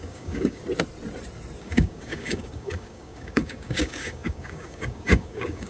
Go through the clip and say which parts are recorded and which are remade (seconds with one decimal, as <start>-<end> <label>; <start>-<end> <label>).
0.0-0.6 remade; 0.6-1.6 recorded; 1.6-5.7 remade